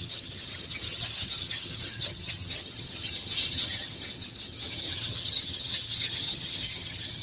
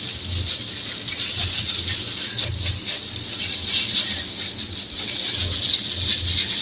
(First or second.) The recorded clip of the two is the second